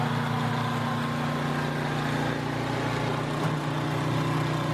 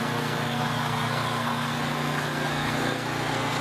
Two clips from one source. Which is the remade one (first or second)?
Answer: second